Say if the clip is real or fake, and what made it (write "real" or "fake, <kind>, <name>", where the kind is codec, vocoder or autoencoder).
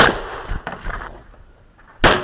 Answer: real